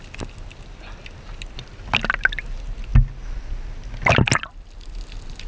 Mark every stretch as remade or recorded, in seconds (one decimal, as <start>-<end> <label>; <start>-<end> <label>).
0.0-5.5 recorded

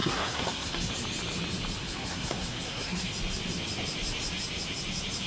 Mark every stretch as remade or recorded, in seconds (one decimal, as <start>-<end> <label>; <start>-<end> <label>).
0.0-0.9 remade; 0.9-1.8 recorded; 1.8-3.1 remade; 3.1-5.3 recorded

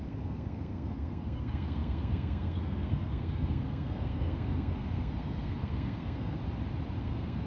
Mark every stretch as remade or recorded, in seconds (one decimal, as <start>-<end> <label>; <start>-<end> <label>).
0.0-6.4 remade; 6.4-7.0 recorded; 7.0-7.5 remade

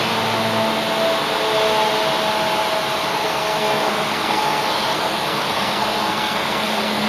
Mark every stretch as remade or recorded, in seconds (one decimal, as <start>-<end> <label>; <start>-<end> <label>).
0.0-3.1 recorded; 3.1-7.1 remade

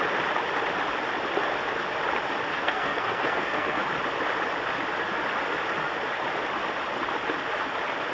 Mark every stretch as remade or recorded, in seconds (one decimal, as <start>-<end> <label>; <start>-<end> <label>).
0.0-2.5 recorded; 2.5-3.8 remade; 3.8-8.1 recorded

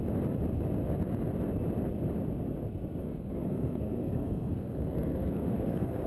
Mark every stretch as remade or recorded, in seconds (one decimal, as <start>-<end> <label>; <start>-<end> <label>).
0.0-3.0 recorded; 3.0-6.1 remade